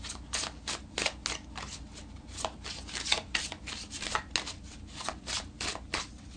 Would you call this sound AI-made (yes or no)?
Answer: no